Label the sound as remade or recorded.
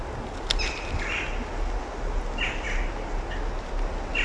recorded